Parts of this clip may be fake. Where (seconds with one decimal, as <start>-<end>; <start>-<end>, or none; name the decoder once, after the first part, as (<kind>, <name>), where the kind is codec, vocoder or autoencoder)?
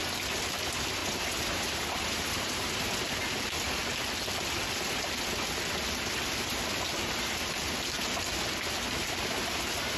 1.0-2.8 (vocoder, BigVGAN v2)